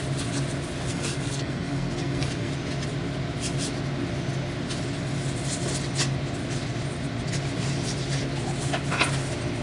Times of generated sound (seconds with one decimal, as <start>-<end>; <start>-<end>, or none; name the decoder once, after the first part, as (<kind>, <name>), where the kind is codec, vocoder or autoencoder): 0.9-2.5 (codec, SNAC)